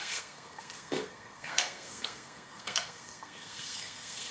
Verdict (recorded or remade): remade